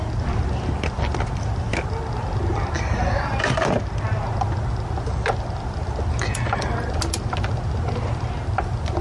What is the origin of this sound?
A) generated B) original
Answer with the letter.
B